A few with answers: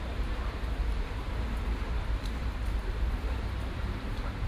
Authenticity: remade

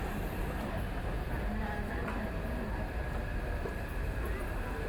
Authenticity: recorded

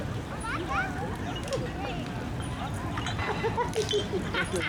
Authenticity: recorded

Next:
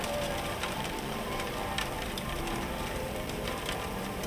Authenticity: remade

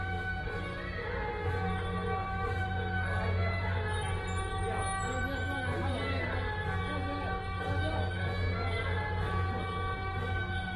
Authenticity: recorded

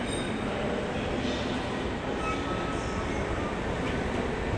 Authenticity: recorded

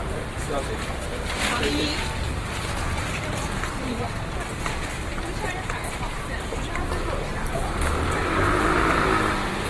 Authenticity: remade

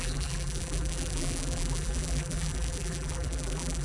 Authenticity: remade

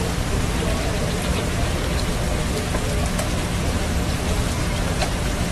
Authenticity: recorded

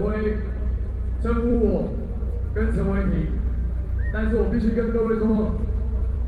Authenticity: remade